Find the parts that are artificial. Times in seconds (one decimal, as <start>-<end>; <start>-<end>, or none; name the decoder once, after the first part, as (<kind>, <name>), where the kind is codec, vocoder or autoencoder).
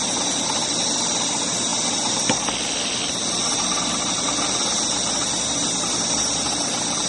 none